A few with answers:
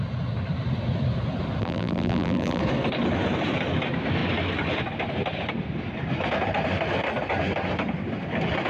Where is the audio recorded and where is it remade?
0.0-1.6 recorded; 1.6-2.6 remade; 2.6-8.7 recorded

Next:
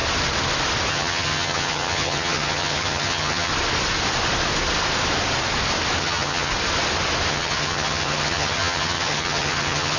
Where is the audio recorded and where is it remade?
0.0-0.9 recorded; 0.9-3.5 remade; 3.5-6.0 recorded; 6.0-6.5 remade; 6.5-7.3 recorded; 7.3-10.0 remade

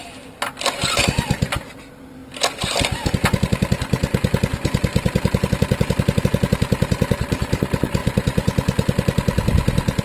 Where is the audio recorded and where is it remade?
0.0-2.2 recorded; 2.2-3.1 remade; 3.1-4.9 recorded; 4.9-6.2 remade; 6.2-10.0 recorded

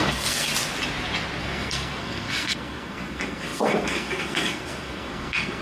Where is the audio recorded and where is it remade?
0.0-0.5 remade; 0.5-1.4 recorded; 1.4-5.6 remade

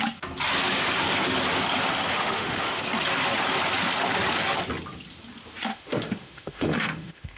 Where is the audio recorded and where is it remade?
0.0-2.1 recorded; 2.1-2.8 remade; 2.8-5.7 recorded; 5.7-7.4 remade

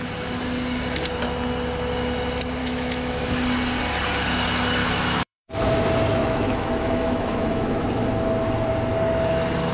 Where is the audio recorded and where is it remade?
0.0-2.6 recorded; 2.6-3.2 remade; 3.2-4.8 recorded; 4.8-5.6 remade; 5.6-6.2 recorded; 6.2-7.8 remade; 7.8-9.7 recorded

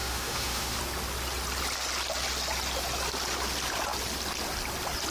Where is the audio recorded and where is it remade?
0.0-0.8 remade; 0.8-5.1 recorded

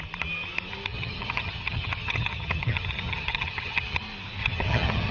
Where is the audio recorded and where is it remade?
0.0-0.9 recorded; 0.9-4.0 remade; 4.0-4.4 recorded; 4.4-5.1 remade